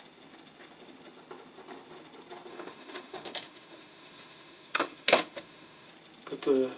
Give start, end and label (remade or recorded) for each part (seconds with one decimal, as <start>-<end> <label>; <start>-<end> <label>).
0.0-2.5 recorded; 2.5-5.9 remade; 5.9-6.8 recorded